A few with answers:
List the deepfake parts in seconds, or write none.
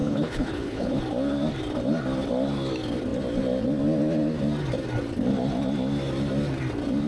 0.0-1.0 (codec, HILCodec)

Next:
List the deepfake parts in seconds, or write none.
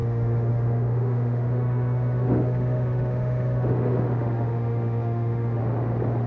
0.0-5.6 (autoencoder, DAC-VAE)